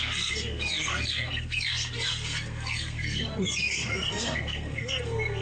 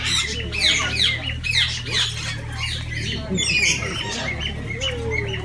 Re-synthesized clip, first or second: first